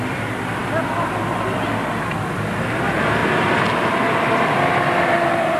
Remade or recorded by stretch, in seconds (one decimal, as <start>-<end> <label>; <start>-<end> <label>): 0.0-5.6 recorded